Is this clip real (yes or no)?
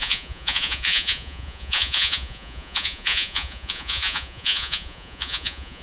no